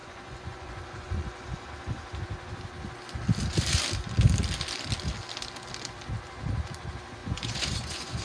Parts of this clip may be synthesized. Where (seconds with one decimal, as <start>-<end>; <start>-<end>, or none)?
0.0-1.7; 7.2-8.2